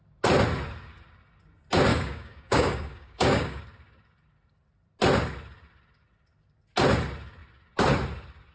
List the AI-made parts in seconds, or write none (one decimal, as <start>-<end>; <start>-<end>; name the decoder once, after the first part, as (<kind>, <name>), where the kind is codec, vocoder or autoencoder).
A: 1.9-3.6 (codec, DAC)